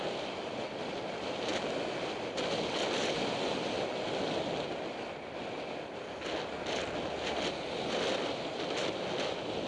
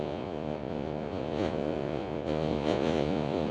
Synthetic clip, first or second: second